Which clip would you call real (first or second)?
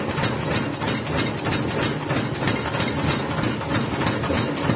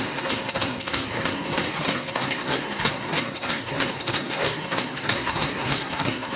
first